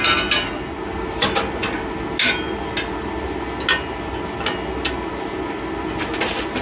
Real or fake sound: real